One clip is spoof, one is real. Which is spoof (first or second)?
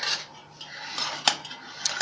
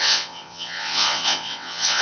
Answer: second